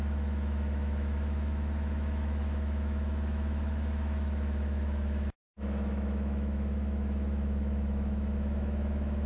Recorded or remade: remade